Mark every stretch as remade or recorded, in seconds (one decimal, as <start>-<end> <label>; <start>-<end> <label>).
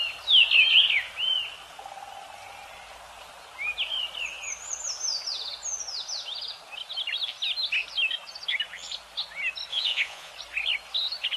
0.0-9.7 recorded; 9.7-10.3 remade; 10.3-11.4 recorded